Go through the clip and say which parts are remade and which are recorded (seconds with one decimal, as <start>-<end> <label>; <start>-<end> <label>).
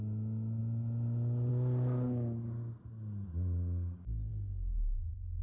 0.0-5.4 recorded